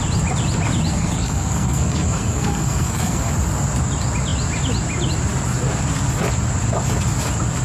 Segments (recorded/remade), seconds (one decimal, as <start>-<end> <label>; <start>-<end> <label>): 0.0-0.9 recorded; 0.9-3.3 remade; 3.3-7.6 recorded